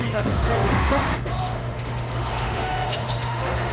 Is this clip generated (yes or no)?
yes